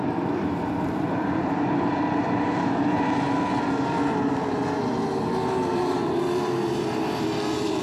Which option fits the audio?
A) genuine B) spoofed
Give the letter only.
B